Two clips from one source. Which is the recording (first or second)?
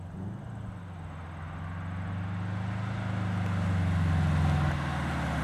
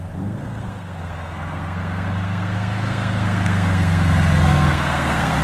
first